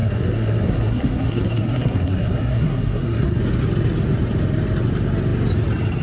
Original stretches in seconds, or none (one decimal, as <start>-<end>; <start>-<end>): 3.4-6.0